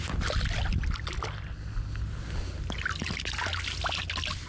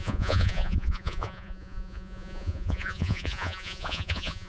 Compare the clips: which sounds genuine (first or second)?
first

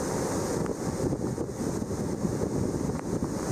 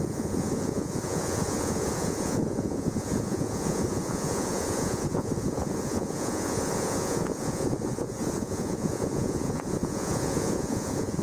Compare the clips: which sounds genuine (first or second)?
first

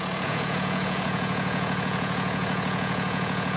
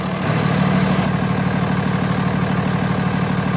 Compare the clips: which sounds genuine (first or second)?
second